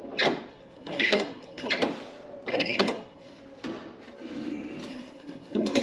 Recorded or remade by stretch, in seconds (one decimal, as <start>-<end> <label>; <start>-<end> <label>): 0.0-0.5 recorded; 0.5-1.7 remade; 1.7-2.5 recorded; 2.5-3.4 remade; 3.4-4.9 recorded; 4.9-5.8 remade